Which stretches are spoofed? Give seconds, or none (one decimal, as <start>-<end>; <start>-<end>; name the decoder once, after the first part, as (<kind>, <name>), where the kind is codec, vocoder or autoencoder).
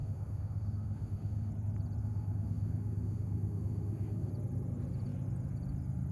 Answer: 0.0-1.5 (autoencoder, DAC-VAE); 2.0-4.3